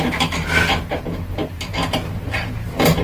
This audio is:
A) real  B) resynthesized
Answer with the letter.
A